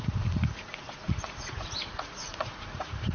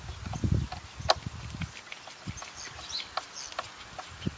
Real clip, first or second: second